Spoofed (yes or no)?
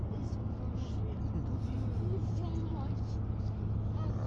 no